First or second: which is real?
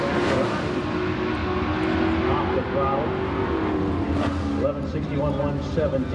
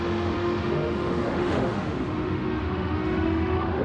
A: first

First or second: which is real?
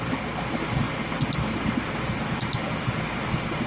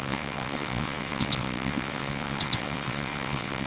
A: first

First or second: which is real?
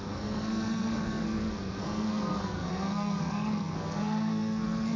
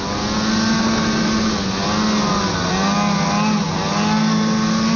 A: second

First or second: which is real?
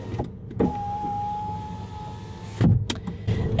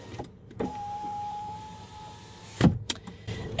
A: first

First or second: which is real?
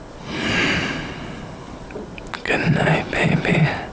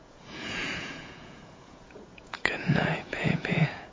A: first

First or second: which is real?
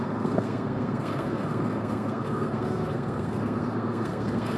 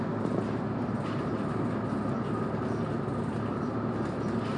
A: second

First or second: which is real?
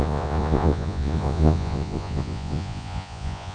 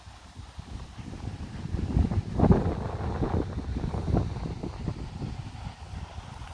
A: second